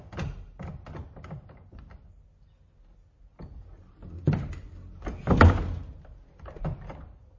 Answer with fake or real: real